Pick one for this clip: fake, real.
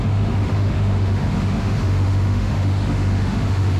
fake